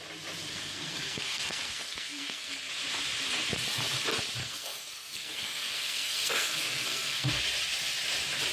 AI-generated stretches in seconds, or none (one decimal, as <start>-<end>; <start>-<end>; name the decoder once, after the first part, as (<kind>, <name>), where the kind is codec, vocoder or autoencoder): 0.5-2.7 (codec, SNAC); 4.4-7.4